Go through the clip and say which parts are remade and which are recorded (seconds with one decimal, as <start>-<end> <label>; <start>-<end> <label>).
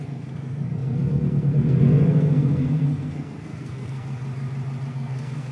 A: 0.0-4.2 remade; 4.2-4.9 recorded; 4.9-5.5 remade